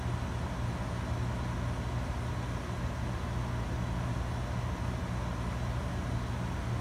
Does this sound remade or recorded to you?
recorded